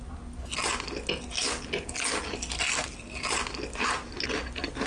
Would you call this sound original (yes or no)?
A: yes